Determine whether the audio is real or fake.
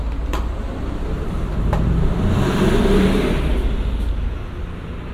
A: real